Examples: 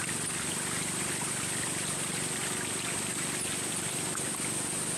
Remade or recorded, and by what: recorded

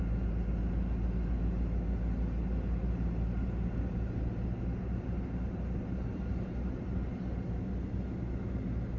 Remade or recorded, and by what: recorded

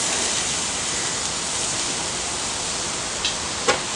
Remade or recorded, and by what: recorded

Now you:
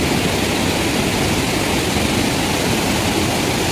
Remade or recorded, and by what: recorded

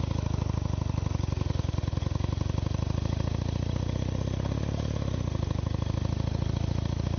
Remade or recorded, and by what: recorded